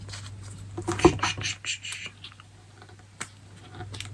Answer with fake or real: real